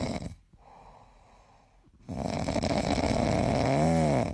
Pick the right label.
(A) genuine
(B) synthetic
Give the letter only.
A